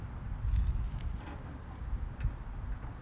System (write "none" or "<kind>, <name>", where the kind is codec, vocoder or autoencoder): none